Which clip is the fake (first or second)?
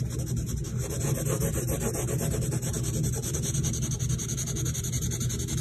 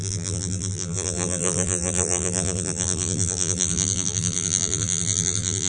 second